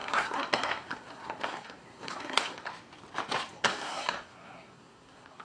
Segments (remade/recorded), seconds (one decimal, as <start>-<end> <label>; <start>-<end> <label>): 0.0-2.7 remade; 2.7-3.5 recorded; 3.5-5.4 remade